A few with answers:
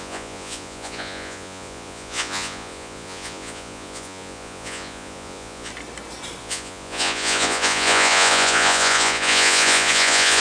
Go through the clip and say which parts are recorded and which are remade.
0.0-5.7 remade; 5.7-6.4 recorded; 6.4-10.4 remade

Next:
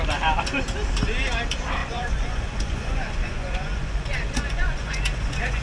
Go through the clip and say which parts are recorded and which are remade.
0.0-1.8 recorded; 1.8-5.6 remade

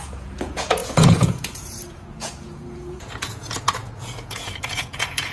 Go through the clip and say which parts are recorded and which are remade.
0.0-5.3 remade